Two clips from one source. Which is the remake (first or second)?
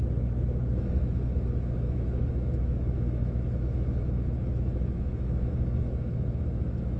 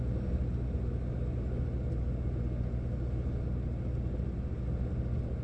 first